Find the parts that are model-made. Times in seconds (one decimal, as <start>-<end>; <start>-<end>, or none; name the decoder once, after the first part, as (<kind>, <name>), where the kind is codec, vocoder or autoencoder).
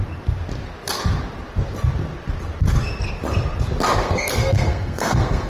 4.0-5.5 (codec, SNAC)